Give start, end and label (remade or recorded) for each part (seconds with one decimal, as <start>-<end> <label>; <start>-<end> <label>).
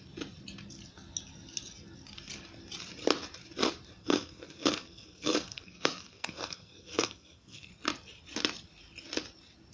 0.0-4.0 recorded; 4.0-7.7 remade; 7.7-9.7 recorded